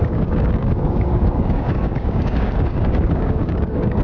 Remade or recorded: remade